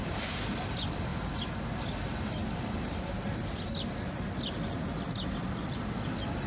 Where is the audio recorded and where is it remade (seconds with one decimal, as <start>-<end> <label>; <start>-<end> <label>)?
0.0-6.5 recorded